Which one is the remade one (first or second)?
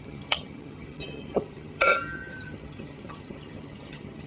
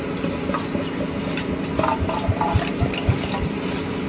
first